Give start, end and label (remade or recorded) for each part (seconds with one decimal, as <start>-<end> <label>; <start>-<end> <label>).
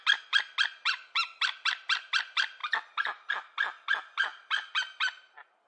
0.0-5.7 recorded